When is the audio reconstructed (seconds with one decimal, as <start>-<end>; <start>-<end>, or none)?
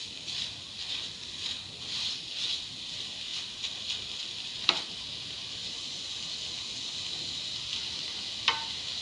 5.6-6.2